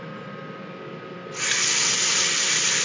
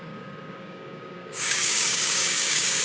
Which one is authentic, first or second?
first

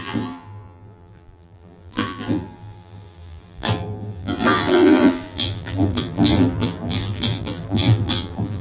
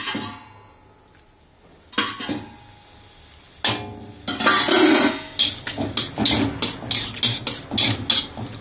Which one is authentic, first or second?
second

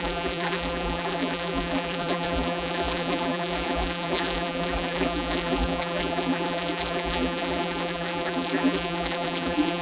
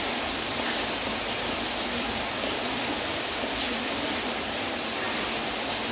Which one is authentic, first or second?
second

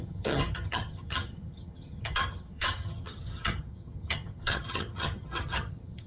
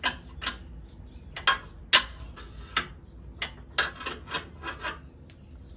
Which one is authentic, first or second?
second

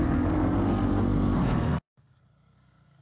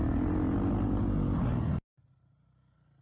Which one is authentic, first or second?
second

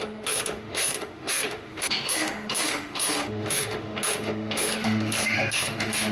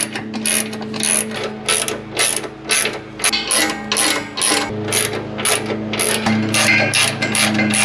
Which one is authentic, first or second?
second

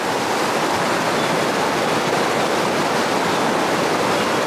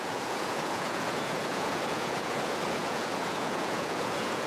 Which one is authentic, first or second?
first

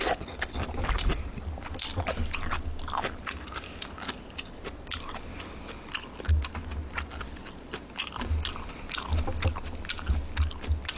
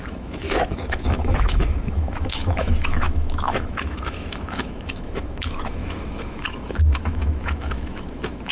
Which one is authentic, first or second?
first